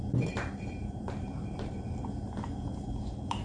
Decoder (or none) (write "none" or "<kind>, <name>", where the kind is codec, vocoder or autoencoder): vocoder, BigVGAN v2